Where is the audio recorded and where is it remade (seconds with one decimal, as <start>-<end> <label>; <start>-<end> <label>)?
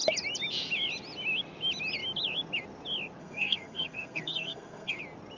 0.0-3.2 recorded; 3.2-5.0 remade; 5.0-5.4 recorded